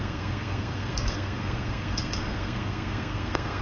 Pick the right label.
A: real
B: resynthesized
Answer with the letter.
B